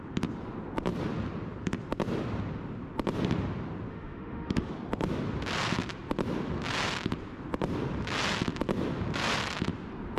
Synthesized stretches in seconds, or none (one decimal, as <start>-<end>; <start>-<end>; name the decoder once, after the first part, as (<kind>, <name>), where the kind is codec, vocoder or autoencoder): 3.9-4.7 (autoencoder, DAC-VAE)